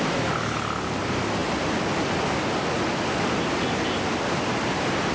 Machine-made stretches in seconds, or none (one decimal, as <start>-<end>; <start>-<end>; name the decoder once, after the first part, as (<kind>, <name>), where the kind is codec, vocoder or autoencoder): none